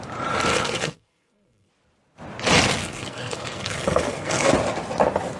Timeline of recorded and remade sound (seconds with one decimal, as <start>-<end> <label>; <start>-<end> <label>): 0.0-0.5 recorded; 0.5-1.7 remade; 1.7-2.8 recorded; 2.8-4.5 remade; 4.5-5.4 recorded